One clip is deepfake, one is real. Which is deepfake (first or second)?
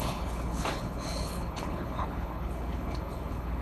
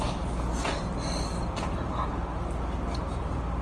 first